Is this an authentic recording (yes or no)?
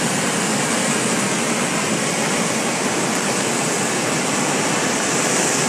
yes